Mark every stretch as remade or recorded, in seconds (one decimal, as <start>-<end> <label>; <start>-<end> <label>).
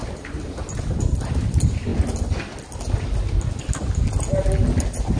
0.0-1.3 remade; 1.3-5.2 recorded